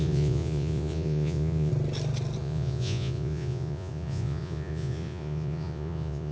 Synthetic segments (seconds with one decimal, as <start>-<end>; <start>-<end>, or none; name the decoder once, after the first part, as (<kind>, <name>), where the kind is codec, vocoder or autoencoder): 0.0-1.7 (vocoder, Vocos); 2.4-6.3